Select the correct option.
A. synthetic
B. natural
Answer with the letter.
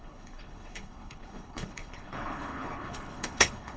A